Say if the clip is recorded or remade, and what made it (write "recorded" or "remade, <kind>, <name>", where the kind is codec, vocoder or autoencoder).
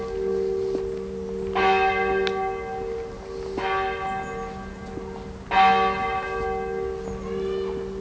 recorded